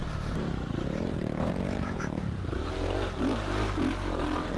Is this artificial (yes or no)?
yes